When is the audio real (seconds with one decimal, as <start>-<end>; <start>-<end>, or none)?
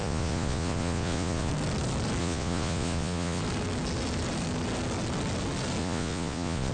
1.5-2.2; 3.4-5.8